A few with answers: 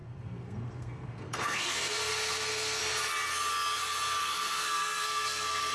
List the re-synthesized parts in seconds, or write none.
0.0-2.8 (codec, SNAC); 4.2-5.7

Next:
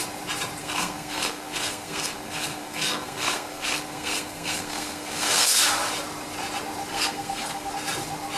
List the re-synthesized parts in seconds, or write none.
0.6-5.6 (codec, SNAC); 6.9-7.7

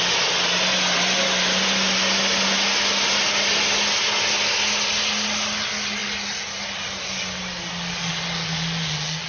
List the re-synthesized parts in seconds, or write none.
none